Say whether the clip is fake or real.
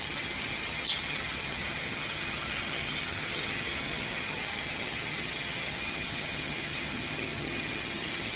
fake